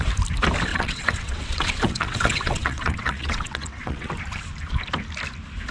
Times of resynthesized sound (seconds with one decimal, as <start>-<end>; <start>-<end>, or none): 0.7-4.1